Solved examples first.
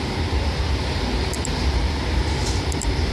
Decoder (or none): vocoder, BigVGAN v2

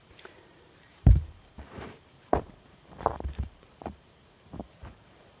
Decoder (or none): vocoder, BigVGAN v2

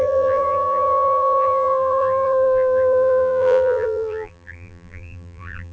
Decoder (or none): vocoder, BigVGAN v2